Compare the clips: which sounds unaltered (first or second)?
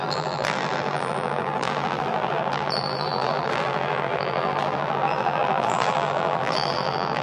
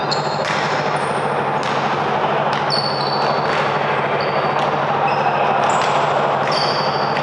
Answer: second